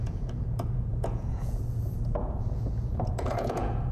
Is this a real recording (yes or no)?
no